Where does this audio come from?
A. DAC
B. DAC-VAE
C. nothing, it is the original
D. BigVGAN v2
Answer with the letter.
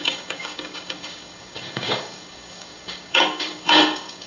A